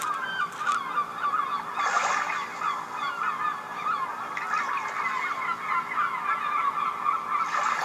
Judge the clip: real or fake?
real